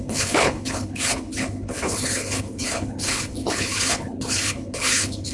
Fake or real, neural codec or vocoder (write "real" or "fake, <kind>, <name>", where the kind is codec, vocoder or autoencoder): fake, codec, HILCodec